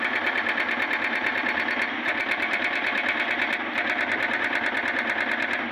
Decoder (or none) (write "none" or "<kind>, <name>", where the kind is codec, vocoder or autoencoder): vocoder, BigVGAN v2